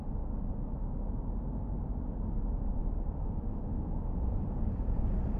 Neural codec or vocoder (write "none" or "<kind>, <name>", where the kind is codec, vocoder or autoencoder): none